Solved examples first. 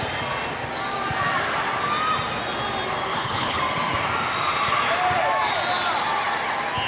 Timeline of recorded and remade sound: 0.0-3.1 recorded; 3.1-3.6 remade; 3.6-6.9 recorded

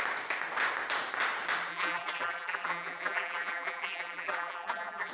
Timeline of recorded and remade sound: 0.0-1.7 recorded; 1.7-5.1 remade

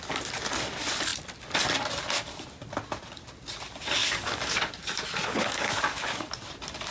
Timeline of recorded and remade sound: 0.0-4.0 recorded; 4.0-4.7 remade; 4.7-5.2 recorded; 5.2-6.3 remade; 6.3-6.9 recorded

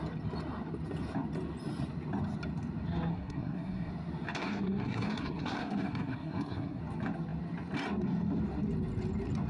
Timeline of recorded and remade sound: 0.0-3.1 recorded; 3.1-3.9 remade; 3.9-4.4 recorded; 4.4-6.8 remade; 6.8-9.5 recorded

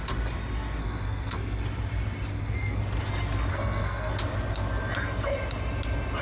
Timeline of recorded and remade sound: 0.0-0.8 recorded; 0.8-1.6 remade; 1.6-2.3 recorded; 2.3-2.8 remade; 2.8-3.5 recorded; 3.5-4.1 remade; 4.1-6.2 recorded

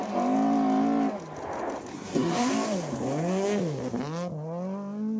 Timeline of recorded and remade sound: 0.0-1.9 recorded; 1.9-2.5 remade; 2.5-5.2 recorded

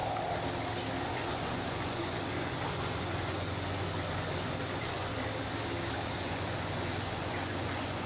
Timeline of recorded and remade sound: 0.0-1.0 recorded; 1.0-5.1 remade; 5.1-6.2 recorded; 6.2-8.1 remade